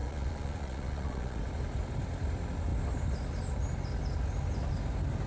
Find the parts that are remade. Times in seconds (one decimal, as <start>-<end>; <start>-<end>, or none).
0.0-1.4